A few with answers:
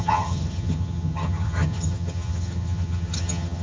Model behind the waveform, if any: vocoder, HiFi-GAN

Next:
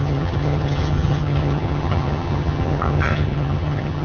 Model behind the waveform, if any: vocoder, HiFi-GAN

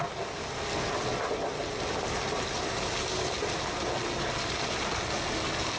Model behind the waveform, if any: none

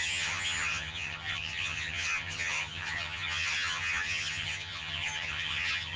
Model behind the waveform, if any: vocoder, HiFi-GAN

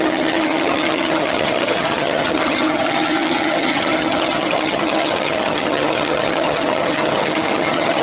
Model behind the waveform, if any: vocoder, HiFi-GAN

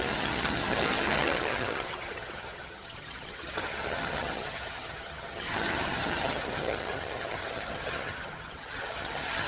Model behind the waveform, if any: vocoder, HiFi-GAN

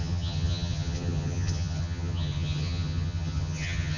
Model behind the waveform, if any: vocoder, HiFi-GAN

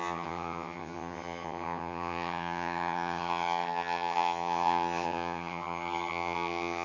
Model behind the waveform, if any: vocoder, HiFi-GAN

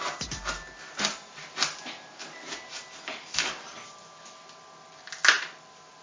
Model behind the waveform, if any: none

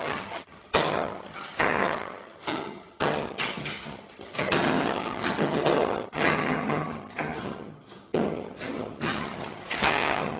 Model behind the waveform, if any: vocoder, HiFi-GAN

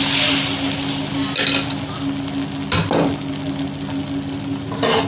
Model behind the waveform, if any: none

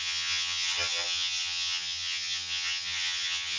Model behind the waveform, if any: vocoder, HiFi-GAN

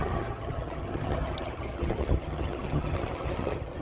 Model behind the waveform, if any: vocoder, HiFi-GAN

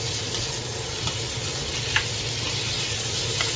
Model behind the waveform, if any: none